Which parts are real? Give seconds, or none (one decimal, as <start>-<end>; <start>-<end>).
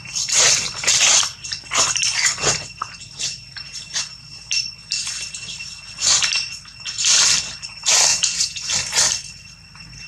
0.0-8.1; 8.7-10.1